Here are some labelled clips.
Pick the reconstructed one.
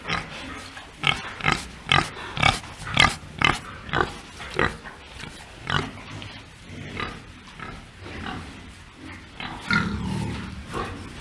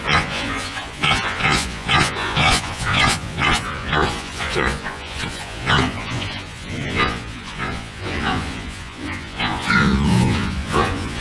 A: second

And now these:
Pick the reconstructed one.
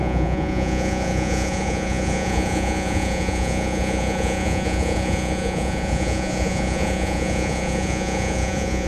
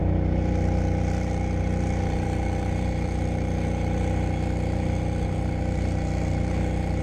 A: first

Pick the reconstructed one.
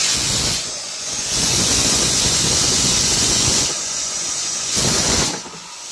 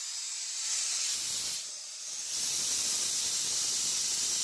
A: first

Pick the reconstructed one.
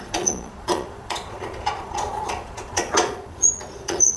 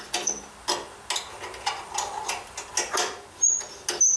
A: first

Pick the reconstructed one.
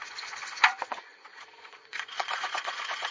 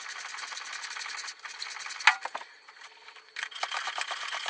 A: first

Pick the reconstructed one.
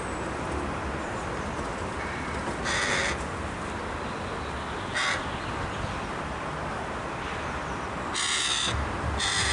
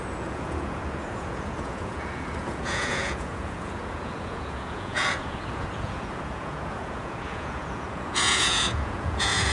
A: second